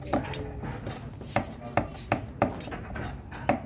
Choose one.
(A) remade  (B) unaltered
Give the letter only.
B